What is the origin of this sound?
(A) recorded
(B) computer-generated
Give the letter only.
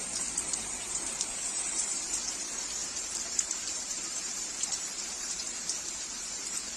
B